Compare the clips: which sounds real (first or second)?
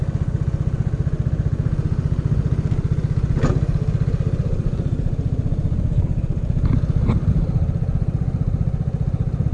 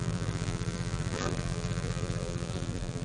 first